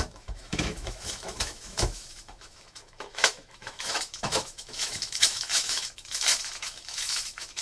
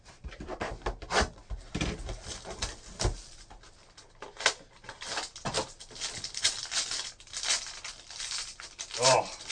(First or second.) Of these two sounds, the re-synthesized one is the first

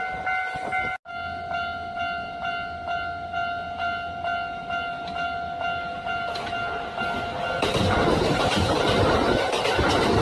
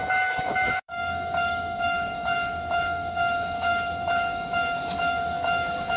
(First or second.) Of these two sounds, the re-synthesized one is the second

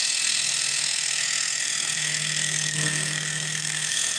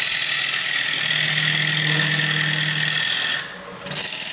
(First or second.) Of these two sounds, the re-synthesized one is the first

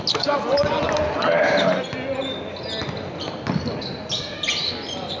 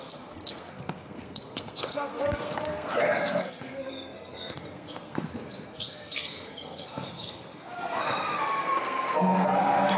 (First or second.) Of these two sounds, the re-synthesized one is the second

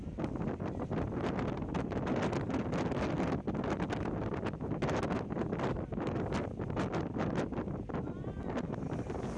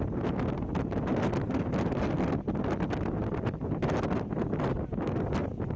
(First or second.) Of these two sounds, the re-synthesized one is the first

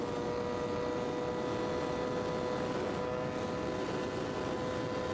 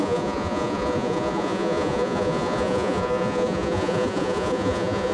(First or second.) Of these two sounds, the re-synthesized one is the second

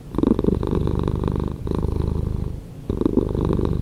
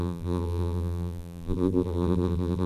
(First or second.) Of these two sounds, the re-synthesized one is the second